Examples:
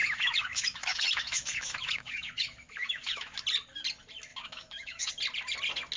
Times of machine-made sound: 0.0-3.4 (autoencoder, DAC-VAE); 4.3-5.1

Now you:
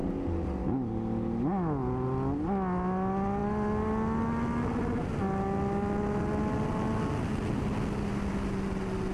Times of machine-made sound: none

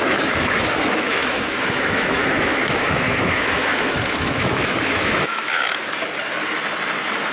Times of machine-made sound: 0.0-5.8 (autoencoder, DAC-VAE)

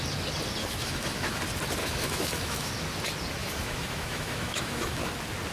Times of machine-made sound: 0.6-1.4 (autoencoder, DAC-VAE); 1.8-2.7; 3.4-5.1

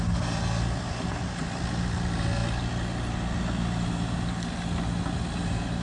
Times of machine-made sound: none